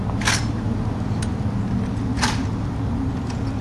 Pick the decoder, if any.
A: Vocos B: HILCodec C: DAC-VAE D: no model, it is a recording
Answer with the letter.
D